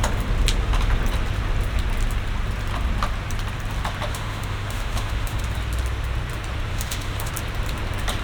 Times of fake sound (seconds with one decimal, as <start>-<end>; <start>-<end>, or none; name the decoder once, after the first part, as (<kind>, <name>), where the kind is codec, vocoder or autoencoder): 4.1-5.4 (autoencoder, DAC-VAE); 6.7-7.3